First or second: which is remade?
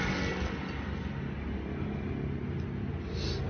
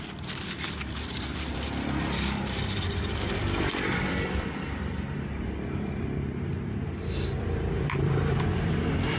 second